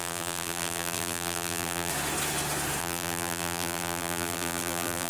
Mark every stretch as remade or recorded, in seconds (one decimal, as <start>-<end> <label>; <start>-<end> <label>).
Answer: 0.0-1.9 remade; 1.9-2.8 recorded; 2.8-5.1 remade